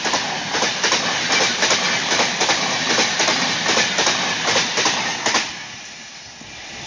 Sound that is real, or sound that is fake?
real